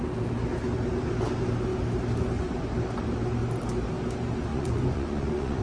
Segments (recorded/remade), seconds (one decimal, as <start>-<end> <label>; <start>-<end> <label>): 0.0-4.5 recorded; 4.5-5.6 remade

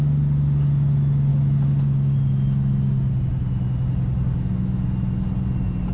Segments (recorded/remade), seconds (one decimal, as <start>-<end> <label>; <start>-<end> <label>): 0.0-5.9 recorded

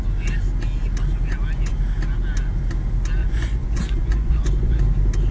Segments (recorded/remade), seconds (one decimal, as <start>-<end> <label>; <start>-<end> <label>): 0.0-3.2 recorded; 3.2-4.8 remade; 4.8-5.3 recorded

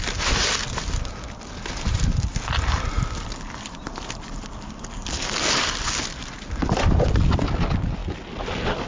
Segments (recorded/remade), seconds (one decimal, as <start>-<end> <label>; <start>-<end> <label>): 0.0-8.9 recorded

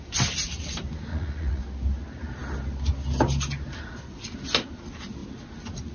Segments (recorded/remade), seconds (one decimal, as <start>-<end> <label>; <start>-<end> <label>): 0.0-1.1 recorded; 1.1-1.6 remade; 1.6-5.9 recorded

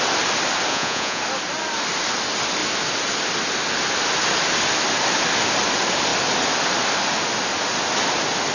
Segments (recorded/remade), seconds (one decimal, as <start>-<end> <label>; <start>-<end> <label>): 0.0-0.7 recorded; 0.7-1.2 remade; 1.2-8.5 recorded

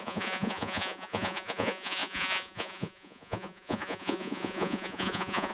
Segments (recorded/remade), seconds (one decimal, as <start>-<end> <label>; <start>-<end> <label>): 0.0-5.5 remade

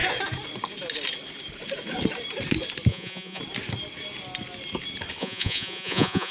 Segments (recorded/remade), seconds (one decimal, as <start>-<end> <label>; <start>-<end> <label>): 0.0-2.9 recorded; 2.9-3.4 remade; 3.4-5.2 recorded; 5.2-6.3 remade